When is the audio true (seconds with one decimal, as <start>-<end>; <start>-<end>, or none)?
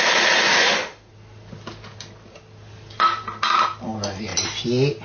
0.0-0.5; 1.1-5.0